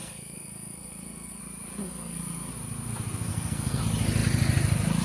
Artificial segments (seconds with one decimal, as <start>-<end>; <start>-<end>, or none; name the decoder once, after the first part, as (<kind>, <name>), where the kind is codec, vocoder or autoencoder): 0.0-1.4 (codec, SNAC); 1.8-2.5; 3.3-3.8